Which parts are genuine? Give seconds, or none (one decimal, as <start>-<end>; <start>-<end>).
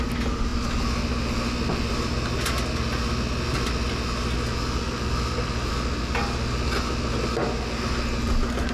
0.0-8.7